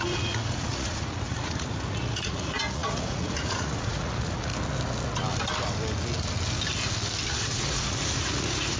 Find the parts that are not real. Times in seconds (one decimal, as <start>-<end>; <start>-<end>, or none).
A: 0.0-4.5; 7.3-8.8